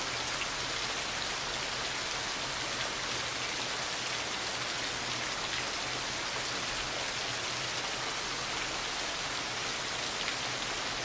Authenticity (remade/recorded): recorded